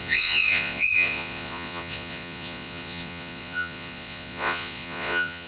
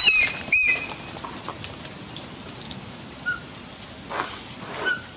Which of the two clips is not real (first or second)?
first